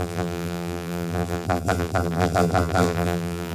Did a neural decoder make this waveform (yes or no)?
yes